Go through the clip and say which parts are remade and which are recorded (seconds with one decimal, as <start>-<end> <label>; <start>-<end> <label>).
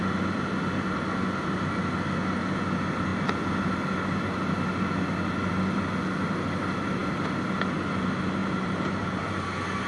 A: 0.0-8.4 recorded; 8.4-9.4 remade; 9.4-9.9 recorded